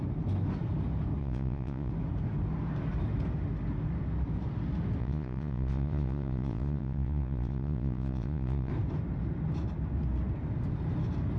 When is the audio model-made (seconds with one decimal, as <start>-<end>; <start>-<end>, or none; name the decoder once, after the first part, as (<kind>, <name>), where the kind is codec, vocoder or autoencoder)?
1.2-1.9 (vocoder, Vocos); 5.0-8.7